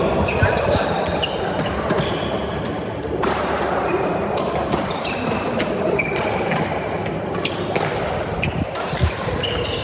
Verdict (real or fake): fake